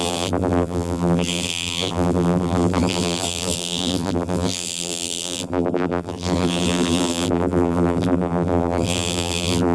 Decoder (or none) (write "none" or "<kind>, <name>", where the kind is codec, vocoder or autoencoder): vocoder, BigVGAN v2